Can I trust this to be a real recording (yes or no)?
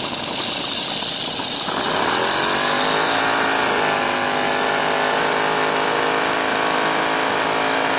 yes